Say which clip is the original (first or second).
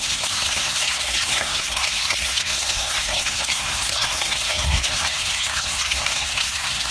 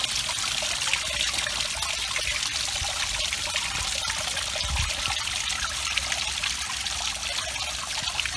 second